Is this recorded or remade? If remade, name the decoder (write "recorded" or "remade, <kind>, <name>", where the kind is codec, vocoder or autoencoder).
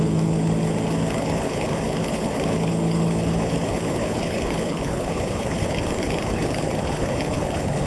remade, codec, HILCodec